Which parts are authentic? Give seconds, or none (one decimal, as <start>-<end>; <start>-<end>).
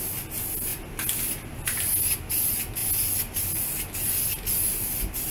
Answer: 0.0-5.3